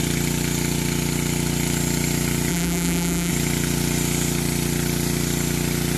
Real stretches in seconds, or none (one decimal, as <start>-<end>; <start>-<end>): 0.0-2.5; 3.3-6.0